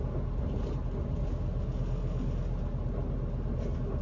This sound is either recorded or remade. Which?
recorded